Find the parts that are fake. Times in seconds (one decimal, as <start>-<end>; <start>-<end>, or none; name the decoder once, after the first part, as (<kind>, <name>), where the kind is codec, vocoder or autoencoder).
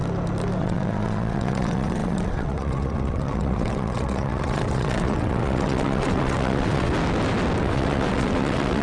0.6-6.9 (vocoder, WaveNeXt); 7.6-8.8